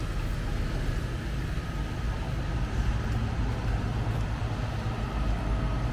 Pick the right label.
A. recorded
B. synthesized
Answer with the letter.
A